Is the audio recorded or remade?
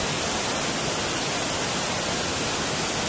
recorded